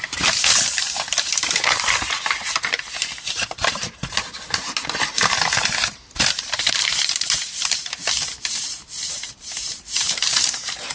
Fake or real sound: fake